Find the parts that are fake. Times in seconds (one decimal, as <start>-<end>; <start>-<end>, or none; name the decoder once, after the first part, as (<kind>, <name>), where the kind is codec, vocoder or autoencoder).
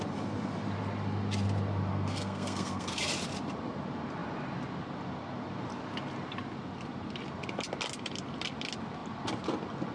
1.9-3.0 (codec, SNAC)